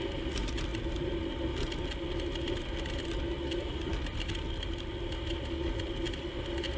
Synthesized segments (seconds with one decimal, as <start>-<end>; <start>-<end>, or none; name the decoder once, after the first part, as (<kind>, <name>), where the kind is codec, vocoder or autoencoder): none